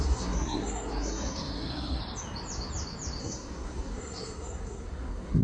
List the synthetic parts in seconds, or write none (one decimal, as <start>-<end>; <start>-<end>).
0.0-2.0; 3.2-5.4

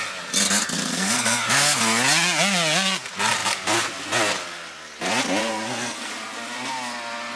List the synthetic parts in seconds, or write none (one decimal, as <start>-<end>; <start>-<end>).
0.6-1.8; 5.4-6.1

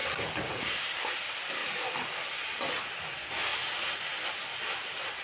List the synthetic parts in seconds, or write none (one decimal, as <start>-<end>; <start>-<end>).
0.6-3.5; 4.1-5.2

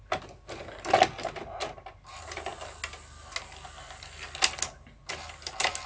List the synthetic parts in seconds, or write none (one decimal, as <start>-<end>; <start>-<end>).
none

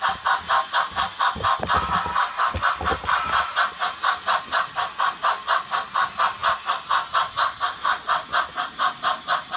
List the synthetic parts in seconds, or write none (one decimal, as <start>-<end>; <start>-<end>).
none

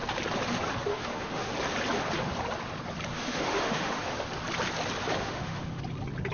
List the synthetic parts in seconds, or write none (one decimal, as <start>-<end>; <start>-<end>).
0.9-1.5; 3.1-4.3; 5.2-5.8

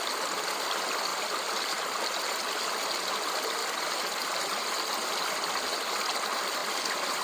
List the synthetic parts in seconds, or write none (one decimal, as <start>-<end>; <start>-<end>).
1.1-2.3; 3.6-5.5; 6.6-7.2